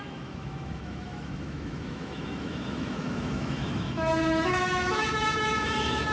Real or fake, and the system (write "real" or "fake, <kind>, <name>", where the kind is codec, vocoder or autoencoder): fake, autoencoder, DAC-VAE